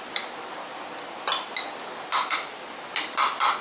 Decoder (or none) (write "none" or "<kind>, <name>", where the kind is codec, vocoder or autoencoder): none